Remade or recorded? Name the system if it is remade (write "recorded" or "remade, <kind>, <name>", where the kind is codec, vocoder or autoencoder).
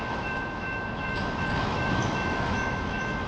remade, autoencoder, DAC-VAE